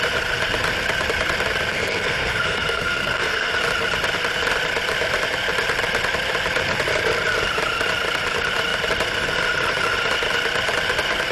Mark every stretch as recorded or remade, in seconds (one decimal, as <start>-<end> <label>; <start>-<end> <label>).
0.0-1.7 recorded; 1.7-3.5 remade; 3.5-11.3 recorded